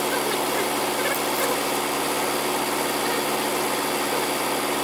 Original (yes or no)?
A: yes